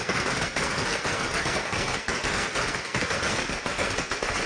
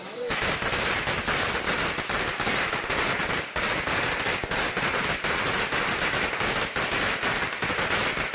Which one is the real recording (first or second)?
second